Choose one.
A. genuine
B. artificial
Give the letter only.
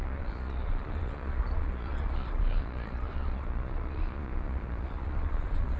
B